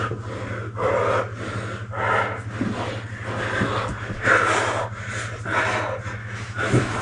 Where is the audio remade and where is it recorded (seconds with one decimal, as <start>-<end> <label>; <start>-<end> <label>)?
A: 0.0-6.2 recorded; 6.2-7.0 remade